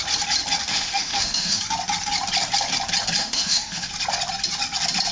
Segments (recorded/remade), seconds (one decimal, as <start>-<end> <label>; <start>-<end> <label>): 0.0-0.7 recorded; 0.7-1.6 remade; 1.6-3.2 recorded; 3.2-3.9 remade; 3.9-5.1 recorded